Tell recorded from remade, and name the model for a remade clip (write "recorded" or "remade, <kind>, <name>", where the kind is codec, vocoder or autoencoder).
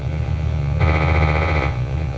remade, vocoder, Vocos